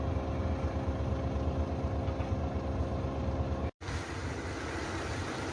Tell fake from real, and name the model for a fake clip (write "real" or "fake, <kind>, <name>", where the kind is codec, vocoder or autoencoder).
real